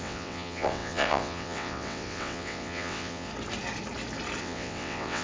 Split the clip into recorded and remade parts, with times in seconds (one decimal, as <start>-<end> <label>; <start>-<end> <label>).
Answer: 0.0-3.3 remade; 3.3-4.4 recorded; 4.4-5.2 remade